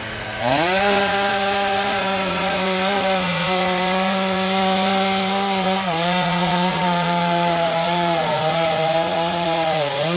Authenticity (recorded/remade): remade